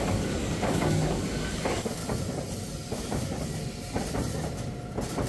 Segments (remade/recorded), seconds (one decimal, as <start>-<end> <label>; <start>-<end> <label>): 0.0-2.0 remade; 2.0-5.3 recorded